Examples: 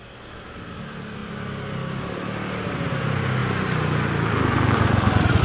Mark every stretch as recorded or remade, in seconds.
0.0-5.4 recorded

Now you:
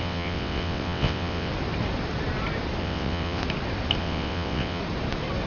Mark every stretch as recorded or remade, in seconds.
0.0-1.5 remade; 1.5-2.8 recorded; 2.8-3.4 remade; 3.4-4.0 recorded; 4.0-4.8 remade; 4.8-5.5 recorded